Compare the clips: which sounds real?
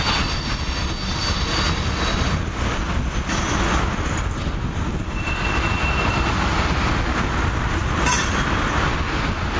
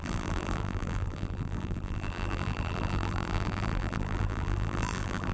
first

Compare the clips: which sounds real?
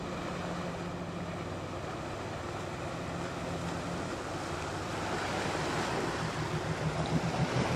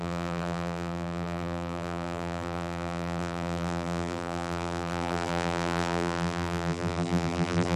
first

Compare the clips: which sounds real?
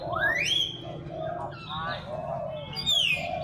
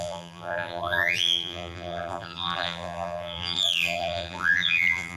first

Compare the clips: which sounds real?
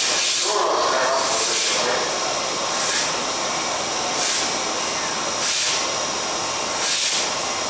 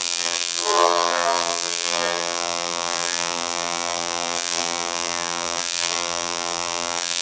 first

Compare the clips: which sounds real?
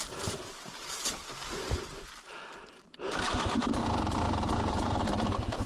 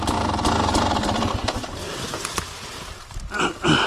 second